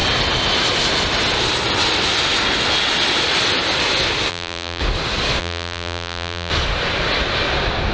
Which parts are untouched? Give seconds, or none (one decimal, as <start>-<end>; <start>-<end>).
0.0-4.3; 4.8-5.4; 6.5-7.9